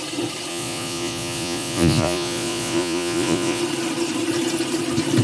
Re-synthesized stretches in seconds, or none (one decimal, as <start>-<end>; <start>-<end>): 0.5-3.6